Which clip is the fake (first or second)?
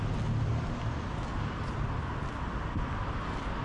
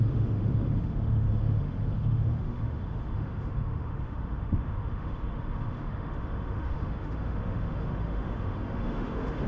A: second